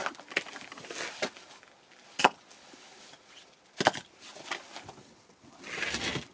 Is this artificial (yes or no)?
no